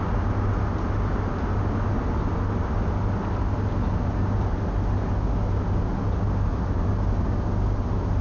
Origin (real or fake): real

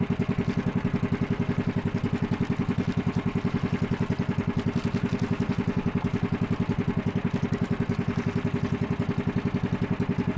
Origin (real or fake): real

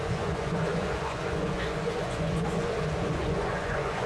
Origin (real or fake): fake